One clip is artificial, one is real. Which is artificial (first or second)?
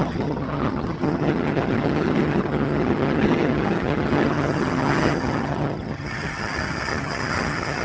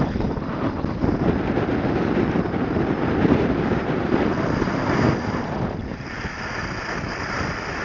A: first